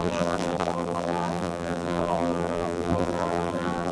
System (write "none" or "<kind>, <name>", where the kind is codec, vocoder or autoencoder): vocoder, BigVGAN v2